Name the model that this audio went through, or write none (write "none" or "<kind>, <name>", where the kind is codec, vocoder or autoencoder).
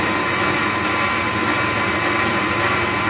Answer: none